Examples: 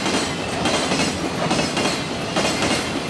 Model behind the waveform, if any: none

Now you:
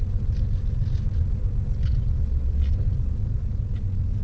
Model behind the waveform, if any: none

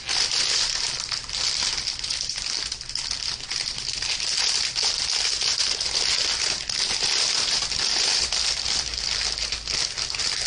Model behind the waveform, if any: none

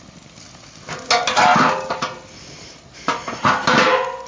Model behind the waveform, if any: none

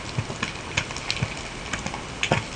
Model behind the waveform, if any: none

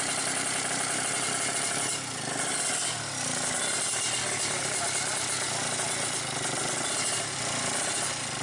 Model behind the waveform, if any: none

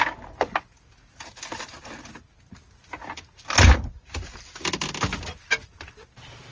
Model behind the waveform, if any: none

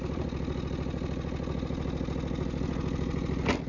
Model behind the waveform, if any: none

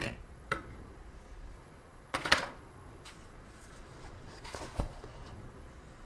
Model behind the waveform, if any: vocoder, Vocos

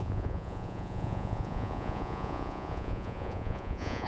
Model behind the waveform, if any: vocoder, Vocos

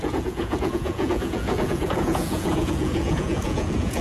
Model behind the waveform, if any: vocoder, Vocos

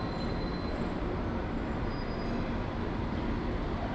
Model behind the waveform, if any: none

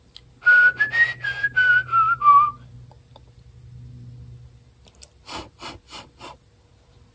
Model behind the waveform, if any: none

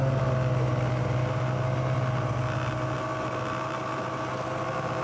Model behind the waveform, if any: none